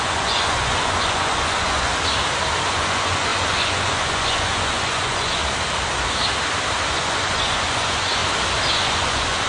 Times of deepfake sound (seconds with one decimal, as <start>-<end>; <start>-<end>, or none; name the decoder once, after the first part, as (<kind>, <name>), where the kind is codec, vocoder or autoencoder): 0.0-1.9 (vocoder, Vocos); 2.7-5.4; 6.9-8.2; 8.7-9.5